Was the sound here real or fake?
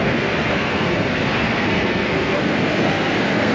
fake